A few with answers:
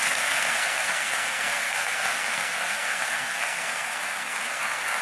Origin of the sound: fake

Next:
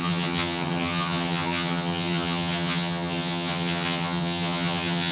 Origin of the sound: fake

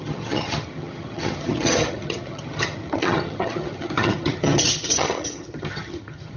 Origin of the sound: fake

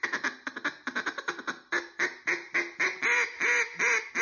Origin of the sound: real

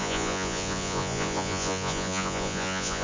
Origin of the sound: fake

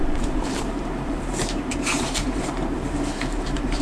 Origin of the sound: fake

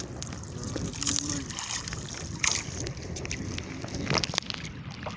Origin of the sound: real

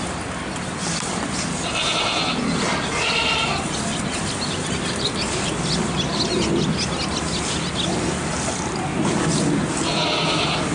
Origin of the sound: real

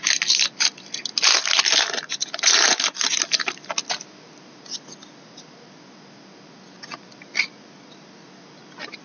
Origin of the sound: real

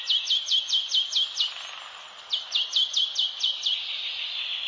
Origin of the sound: real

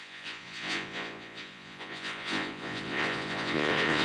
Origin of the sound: fake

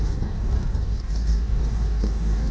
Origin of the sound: fake